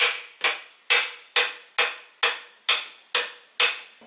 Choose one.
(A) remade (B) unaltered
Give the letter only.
B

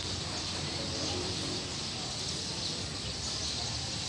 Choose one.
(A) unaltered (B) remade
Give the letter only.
B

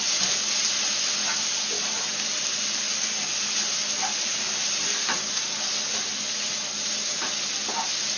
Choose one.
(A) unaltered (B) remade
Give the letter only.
A